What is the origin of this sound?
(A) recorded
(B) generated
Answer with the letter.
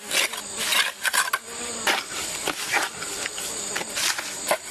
A